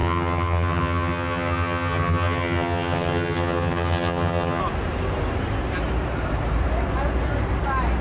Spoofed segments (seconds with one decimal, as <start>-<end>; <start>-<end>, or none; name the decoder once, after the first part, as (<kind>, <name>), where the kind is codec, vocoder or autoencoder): 0.0-4.6 (vocoder, HiFi-GAN)